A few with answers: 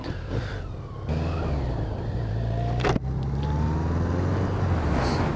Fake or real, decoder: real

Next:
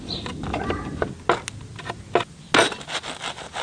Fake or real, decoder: real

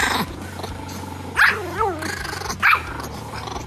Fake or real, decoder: real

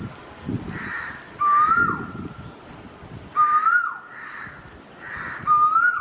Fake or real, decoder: real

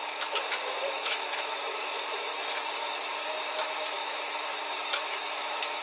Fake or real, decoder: fake, autoencoder, DAC-VAE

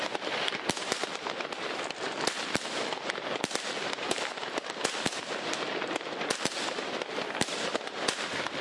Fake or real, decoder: fake, vocoder, BigVGAN v2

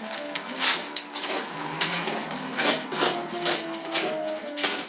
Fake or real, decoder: fake, codec, SNAC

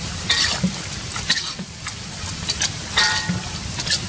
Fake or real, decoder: fake, vocoder, BigVGAN v2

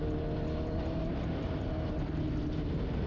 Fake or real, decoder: real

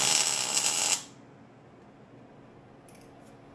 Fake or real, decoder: real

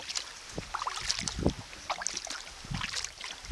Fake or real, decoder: real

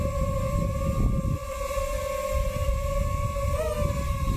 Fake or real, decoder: real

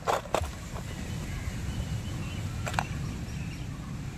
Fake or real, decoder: real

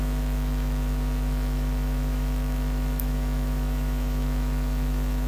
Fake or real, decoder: fake, autoencoder, DAC-VAE